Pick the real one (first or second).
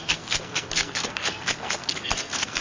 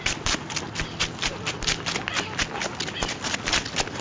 second